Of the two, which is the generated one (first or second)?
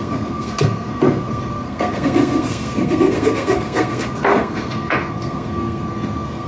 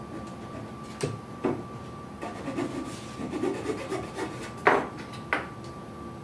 first